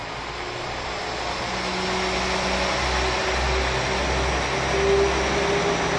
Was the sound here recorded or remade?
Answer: recorded